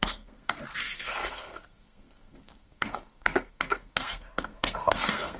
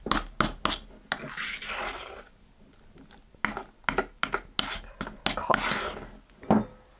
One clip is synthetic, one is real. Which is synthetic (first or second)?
first